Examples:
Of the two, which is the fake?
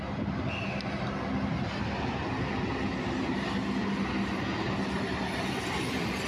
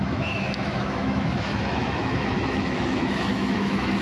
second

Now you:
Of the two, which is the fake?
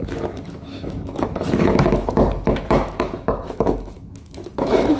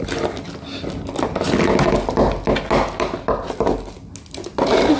first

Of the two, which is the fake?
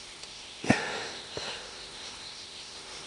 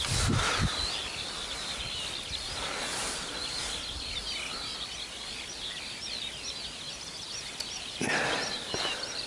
first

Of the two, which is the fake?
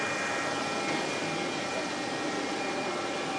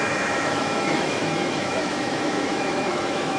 second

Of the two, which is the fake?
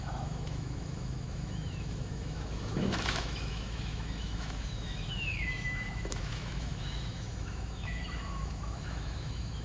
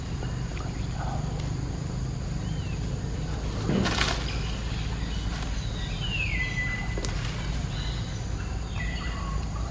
first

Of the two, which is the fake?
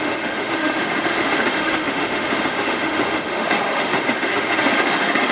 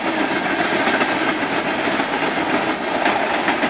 first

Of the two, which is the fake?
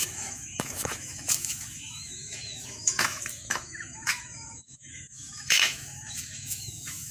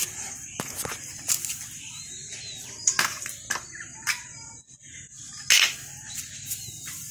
first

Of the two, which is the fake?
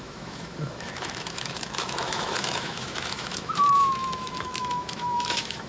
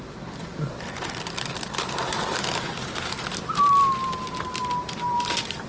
first